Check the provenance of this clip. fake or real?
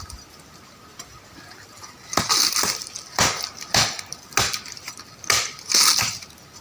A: real